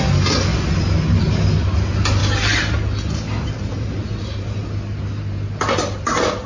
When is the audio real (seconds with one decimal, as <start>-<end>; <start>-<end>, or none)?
0.0-6.5